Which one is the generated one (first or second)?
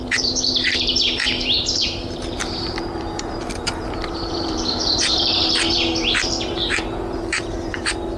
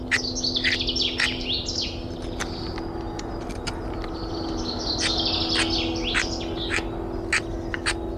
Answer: first